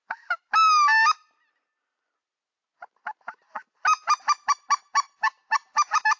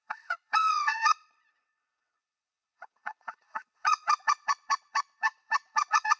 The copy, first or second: second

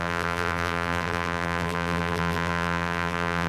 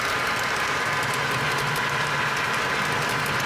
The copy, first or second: first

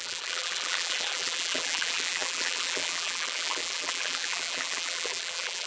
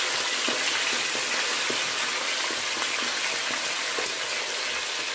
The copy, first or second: first